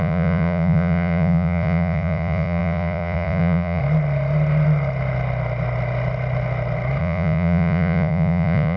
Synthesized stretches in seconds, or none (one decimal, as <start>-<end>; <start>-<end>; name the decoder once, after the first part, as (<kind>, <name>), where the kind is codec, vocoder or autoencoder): 0.0-3.8 (vocoder, Vocos); 7.0-8.8